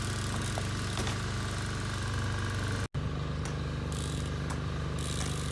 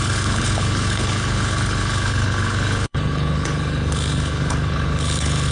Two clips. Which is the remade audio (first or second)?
second